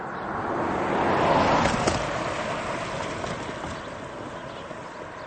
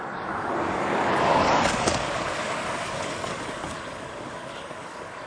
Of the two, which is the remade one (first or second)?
second